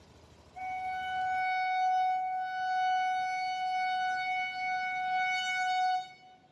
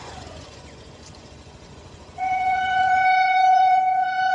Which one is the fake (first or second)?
second